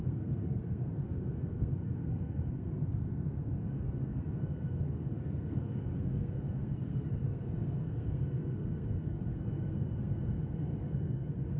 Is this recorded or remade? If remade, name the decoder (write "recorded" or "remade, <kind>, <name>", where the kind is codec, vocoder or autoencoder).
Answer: remade, codec, SNAC